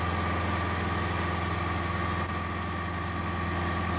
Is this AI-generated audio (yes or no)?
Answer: no